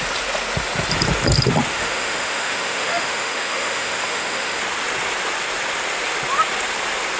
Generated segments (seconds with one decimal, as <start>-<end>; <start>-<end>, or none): 1.7-4.6